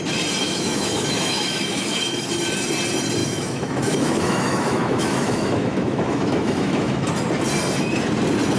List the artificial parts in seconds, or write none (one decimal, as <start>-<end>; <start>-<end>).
0.4-2.3; 3.2-7.1